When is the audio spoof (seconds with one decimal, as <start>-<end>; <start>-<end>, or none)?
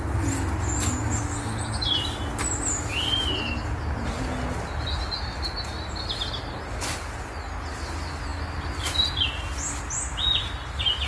none